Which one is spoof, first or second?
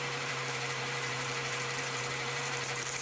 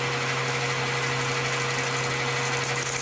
first